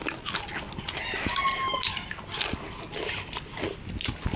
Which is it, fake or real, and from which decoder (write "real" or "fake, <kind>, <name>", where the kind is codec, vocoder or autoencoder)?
real